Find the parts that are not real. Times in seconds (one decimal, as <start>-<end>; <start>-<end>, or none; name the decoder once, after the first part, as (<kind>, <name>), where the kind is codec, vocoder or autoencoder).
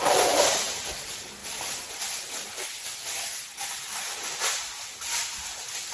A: 0.0-1.4 (vocoder, BigVGAN v2); 1.9-2.7; 5.3-5.9